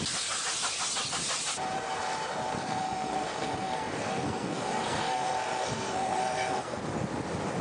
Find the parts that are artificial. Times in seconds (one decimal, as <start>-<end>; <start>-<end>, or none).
2.5-6.8